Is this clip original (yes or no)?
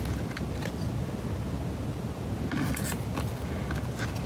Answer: yes